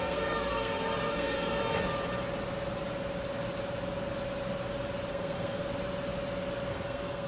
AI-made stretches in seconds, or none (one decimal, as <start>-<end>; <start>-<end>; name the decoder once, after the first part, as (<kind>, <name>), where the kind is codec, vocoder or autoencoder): 0.0-1.6 (codec, SNAC); 5.1-5.6; 6.7-7.3